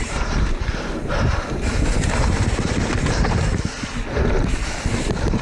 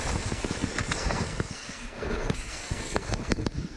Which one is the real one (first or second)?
first